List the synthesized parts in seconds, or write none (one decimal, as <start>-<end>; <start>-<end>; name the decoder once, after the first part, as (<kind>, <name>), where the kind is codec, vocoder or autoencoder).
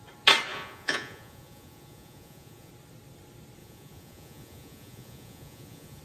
0.5-2.7 (vocoder, Vocos); 3.6-6.0